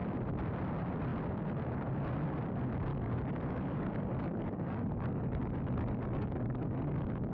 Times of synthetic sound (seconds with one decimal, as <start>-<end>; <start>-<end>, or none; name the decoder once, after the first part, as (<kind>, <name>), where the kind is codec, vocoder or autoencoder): 2.9-7.3 (codec, DAC)